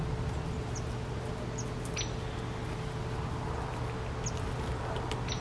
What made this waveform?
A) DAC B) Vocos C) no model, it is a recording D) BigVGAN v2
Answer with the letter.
C